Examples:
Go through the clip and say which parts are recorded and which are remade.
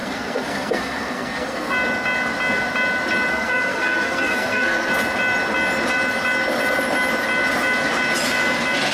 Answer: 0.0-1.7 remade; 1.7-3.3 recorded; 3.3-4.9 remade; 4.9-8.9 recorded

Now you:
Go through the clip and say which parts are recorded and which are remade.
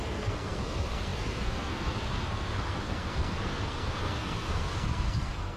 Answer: 0.0-5.6 remade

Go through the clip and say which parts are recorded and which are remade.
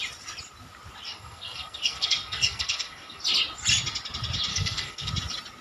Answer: 0.0-1.1 recorded; 1.1-3.2 remade; 3.2-4.5 recorded; 4.5-5.1 remade; 5.1-5.6 recorded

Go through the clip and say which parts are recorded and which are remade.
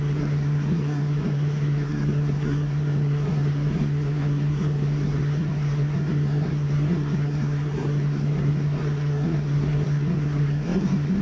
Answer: 0.0-11.2 remade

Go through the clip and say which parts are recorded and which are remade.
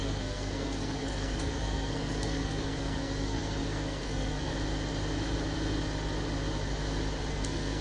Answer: 0.0-4.5 remade; 4.5-7.3 recorded; 7.3-7.8 remade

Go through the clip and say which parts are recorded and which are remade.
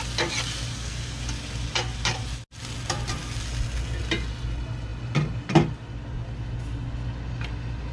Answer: 0.0-0.7 recorded; 0.7-1.2 remade; 1.2-7.9 recorded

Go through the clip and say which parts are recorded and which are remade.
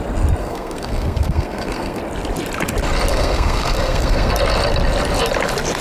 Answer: 0.0-0.4 recorded; 0.4-2.0 remade; 2.0-3.1 recorded; 3.1-4.3 remade; 4.3-5.8 recorded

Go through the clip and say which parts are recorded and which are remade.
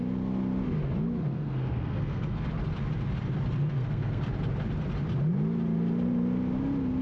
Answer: 0.0-1.2 recorded; 1.2-2.5 remade; 2.5-3.6 recorded; 3.6-4.2 remade; 4.2-7.0 recorded